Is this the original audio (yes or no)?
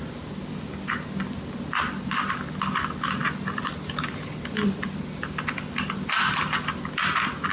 yes